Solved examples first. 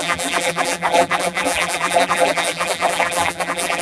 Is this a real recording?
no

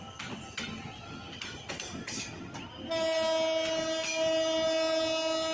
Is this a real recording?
yes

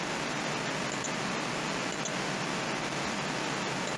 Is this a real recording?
yes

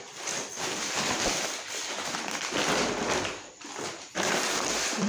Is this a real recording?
no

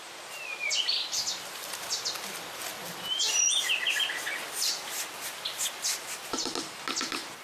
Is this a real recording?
yes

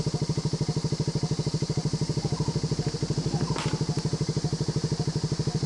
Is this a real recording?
yes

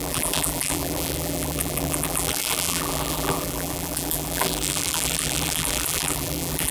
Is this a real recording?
no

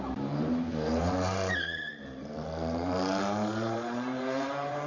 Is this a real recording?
no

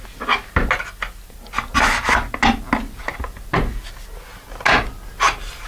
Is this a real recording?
yes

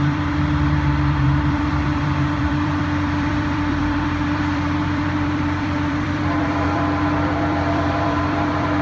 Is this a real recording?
no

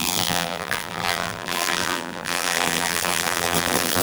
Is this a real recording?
no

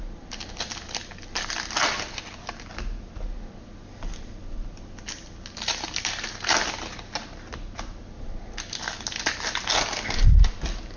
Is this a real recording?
yes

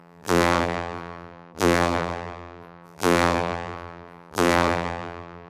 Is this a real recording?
no